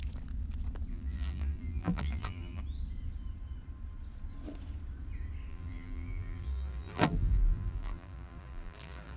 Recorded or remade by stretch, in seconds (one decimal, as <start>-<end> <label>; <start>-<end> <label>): 0.0-0.9 recorded; 0.9-2.6 remade; 2.6-5.5 recorded; 5.5-9.2 remade